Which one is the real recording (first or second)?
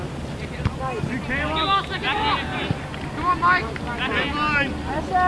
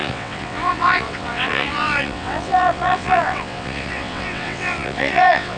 first